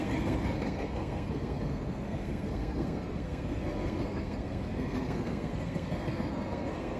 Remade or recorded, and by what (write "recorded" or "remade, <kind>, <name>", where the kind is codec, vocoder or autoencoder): remade, codec, SNAC